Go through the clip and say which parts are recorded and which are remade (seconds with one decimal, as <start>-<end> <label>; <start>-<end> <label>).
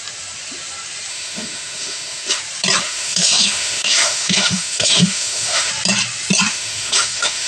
0.0-1.1 recorded; 1.1-2.4 remade; 2.4-2.8 recorded; 2.8-5.7 remade; 5.7-6.5 recorded; 6.5-7.5 remade